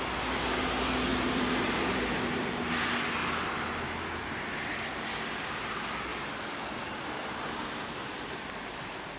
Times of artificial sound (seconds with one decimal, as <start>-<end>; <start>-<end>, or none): 1.1-2.5